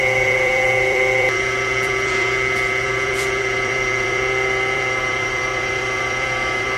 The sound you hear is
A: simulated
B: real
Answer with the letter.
A